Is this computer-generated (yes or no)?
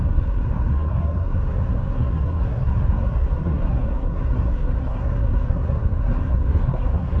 yes